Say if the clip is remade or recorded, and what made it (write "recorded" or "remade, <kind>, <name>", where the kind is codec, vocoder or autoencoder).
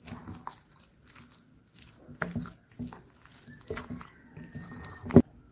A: recorded